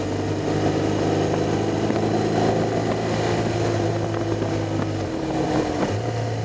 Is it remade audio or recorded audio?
recorded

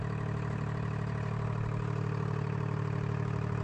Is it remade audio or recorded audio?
recorded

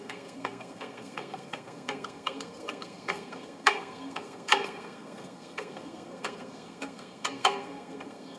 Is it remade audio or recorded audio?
remade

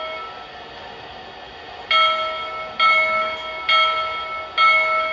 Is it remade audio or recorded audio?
recorded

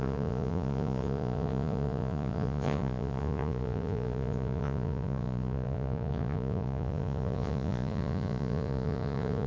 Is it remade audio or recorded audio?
remade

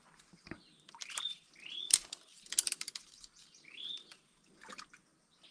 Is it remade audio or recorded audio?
recorded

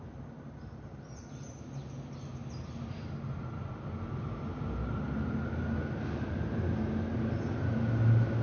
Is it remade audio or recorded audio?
recorded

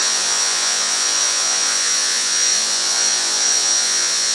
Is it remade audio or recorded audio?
remade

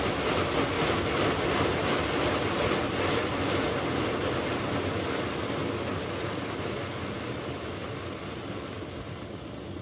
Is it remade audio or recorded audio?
recorded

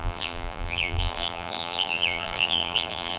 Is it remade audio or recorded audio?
remade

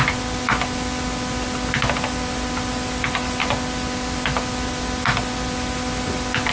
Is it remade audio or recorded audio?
recorded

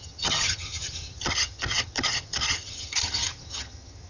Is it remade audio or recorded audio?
remade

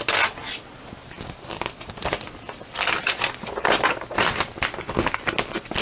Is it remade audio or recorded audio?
recorded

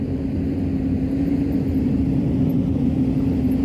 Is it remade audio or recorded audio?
recorded